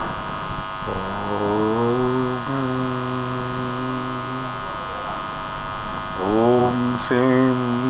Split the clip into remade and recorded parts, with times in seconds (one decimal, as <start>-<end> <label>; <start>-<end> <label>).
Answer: 0.0-7.9 recorded